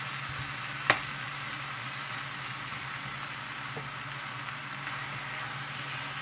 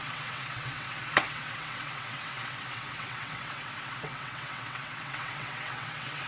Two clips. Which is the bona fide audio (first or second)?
first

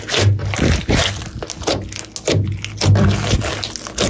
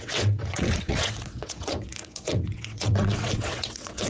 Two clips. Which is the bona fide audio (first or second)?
first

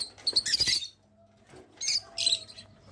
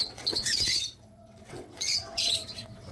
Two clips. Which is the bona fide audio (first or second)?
first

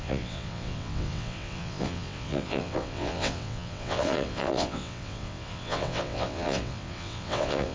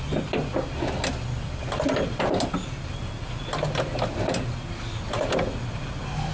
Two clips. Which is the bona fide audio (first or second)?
second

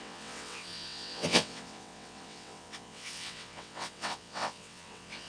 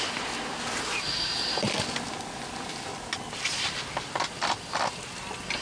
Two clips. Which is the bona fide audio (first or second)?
second